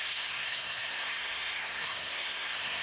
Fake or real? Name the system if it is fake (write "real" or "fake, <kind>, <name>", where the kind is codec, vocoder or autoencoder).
fake, codec, SNAC